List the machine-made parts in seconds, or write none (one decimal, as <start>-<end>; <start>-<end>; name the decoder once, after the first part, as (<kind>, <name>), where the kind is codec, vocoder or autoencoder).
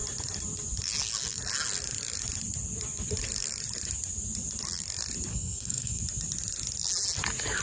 5.3-6.0 (codec, SNAC)